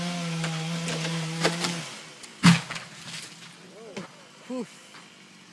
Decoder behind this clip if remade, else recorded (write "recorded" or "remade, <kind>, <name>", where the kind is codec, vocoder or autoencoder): recorded